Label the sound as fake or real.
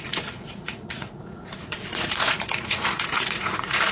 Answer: fake